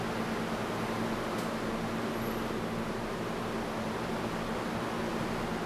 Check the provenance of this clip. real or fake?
real